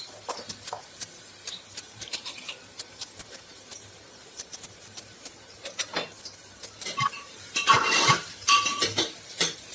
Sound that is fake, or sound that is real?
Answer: fake